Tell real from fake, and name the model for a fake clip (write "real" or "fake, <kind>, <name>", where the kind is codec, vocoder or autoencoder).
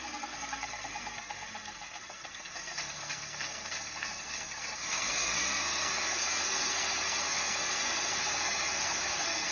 fake, codec, SNAC